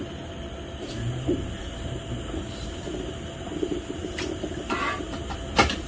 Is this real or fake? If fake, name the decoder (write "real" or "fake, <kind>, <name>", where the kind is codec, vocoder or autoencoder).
real